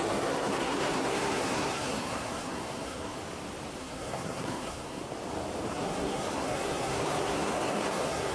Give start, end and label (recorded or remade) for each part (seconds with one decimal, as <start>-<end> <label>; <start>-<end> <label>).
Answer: 0.0-3.2 remade; 3.2-3.8 recorded; 3.8-5.0 remade; 5.0-5.7 recorded; 5.7-8.3 remade